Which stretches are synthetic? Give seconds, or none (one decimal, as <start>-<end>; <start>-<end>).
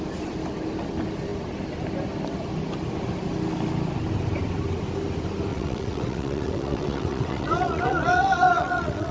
5.5-9.1